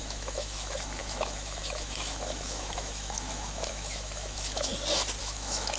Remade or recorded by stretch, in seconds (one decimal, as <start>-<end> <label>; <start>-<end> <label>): 0.0-4.7 remade; 4.7-5.2 recorded; 5.2-5.8 remade